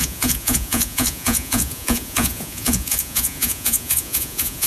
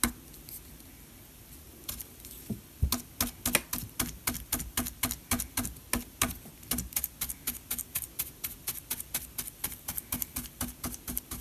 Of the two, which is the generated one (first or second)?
first